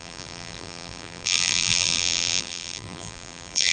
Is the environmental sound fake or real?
fake